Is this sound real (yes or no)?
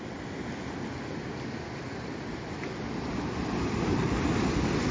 yes